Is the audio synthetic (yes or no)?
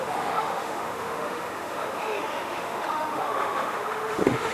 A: yes